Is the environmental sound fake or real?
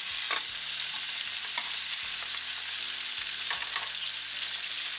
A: real